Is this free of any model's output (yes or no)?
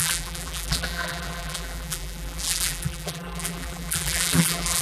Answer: no